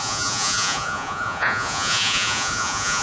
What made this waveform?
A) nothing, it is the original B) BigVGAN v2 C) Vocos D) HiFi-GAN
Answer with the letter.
C